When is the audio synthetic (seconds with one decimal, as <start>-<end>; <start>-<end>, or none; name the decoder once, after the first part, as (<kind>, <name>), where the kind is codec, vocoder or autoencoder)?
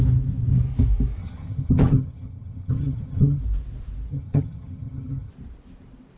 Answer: 1.2-3.4 (vocoder, HiFi-GAN); 4.1-5.3